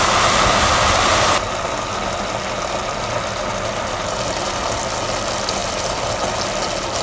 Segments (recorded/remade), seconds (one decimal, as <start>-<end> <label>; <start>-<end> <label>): 0.0-1.1 recorded; 1.1-1.9 remade; 1.9-5.6 recorded; 5.6-6.1 remade; 6.1-7.0 recorded